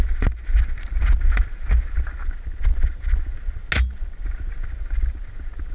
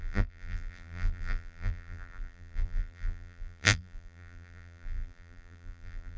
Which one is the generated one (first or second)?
second